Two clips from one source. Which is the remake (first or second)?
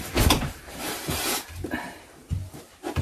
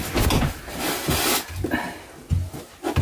first